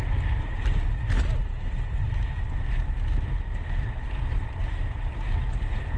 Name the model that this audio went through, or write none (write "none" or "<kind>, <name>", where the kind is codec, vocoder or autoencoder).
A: none